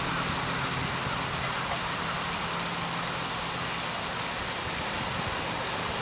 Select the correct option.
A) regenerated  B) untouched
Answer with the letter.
B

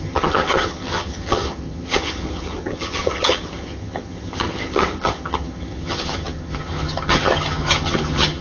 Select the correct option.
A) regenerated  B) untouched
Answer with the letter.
A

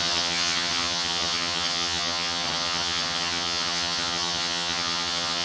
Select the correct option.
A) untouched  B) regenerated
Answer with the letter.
B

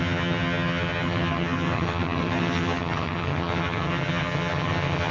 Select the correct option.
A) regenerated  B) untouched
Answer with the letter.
A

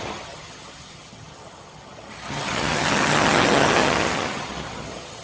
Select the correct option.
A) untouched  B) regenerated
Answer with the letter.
B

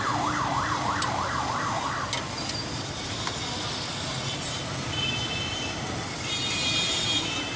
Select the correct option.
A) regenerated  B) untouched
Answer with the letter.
B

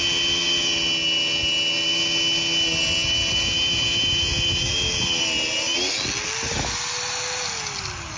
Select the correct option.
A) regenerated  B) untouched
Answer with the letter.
B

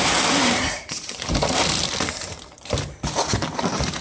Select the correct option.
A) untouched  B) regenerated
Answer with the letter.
A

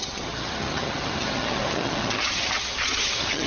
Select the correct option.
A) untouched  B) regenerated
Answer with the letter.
B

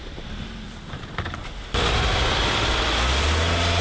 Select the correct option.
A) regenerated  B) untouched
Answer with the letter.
B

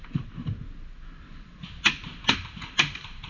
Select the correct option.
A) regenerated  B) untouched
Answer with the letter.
B